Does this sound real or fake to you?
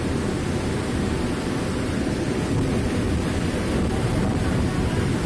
real